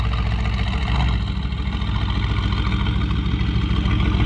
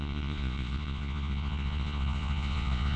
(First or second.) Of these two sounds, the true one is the first